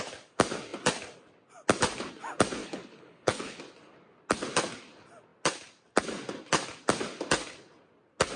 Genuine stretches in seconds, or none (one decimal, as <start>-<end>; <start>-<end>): 0.0-2.6; 3.6-8.4